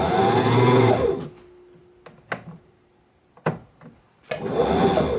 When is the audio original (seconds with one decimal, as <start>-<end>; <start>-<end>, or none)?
0.0-5.2